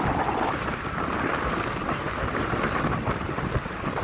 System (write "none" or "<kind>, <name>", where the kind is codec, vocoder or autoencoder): none